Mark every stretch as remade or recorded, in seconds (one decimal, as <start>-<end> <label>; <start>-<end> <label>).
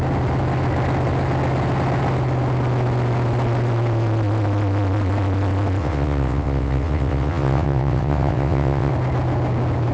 0.0-5.8 recorded; 5.8-8.9 remade; 8.9-9.9 recorded